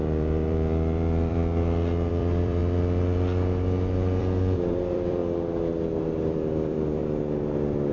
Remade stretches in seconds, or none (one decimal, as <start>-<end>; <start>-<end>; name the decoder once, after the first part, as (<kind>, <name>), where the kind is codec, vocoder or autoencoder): 0.0-1.4 (vocoder, BigVGAN v2); 2.1-2.6; 4.2-5.2; 6.0-7.0